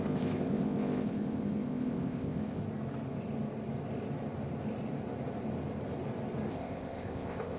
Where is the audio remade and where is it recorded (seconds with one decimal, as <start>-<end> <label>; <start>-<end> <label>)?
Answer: 0.0-2.6 remade; 2.6-6.5 recorded; 6.5-7.6 remade